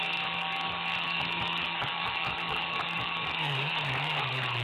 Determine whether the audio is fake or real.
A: fake